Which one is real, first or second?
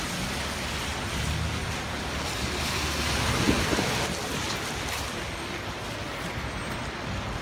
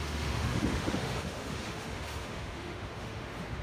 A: first